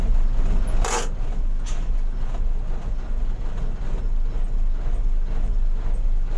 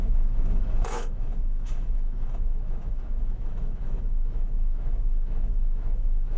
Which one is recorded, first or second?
first